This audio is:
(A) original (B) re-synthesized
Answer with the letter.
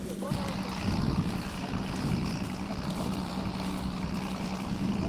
B